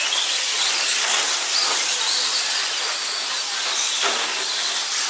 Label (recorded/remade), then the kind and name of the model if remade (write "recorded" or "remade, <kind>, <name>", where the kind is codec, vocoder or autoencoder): recorded